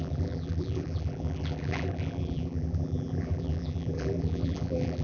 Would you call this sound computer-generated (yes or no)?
yes